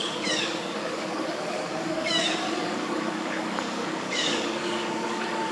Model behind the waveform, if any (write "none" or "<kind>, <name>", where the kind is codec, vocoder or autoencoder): codec, DAC